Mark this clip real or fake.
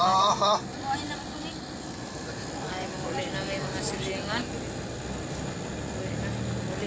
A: real